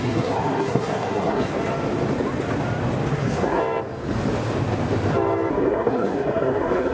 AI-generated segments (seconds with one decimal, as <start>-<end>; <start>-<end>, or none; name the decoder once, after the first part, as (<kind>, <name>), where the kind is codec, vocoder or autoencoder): 0.0-1.5 (codec, SNAC); 3.1-3.6; 5.5-6.9

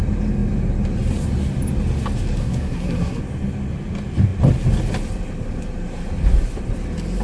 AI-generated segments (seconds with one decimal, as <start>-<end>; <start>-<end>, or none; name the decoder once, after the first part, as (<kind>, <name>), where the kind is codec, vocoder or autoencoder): 2.4-3.2 (codec, SNAC)

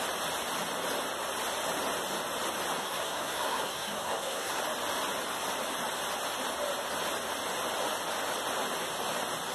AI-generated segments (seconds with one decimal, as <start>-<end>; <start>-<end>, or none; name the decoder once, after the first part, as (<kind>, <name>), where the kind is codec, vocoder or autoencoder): 2.8-4.6 (codec, SNAC)

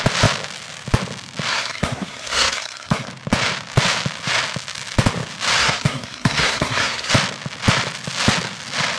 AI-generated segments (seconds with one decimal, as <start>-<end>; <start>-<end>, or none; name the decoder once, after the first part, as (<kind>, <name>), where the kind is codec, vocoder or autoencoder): 1.5-3.1 (codec, SNAC); 5.6-7.1

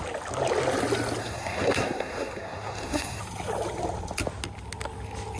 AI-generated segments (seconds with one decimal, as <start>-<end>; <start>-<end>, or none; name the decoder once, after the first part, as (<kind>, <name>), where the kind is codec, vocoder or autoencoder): 1.2-3.2 (codec, SNAC)

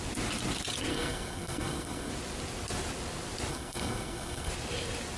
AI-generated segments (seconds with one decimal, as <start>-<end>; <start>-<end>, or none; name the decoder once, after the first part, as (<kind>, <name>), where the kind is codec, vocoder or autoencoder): 0.9-2.1 (codec, SNAC); 3.5-4.5